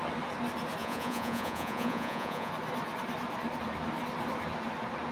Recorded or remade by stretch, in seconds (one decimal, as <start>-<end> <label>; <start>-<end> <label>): 0.0-0.8 recorded; 0.8-2.5 remade; 2.5-5.1 recorded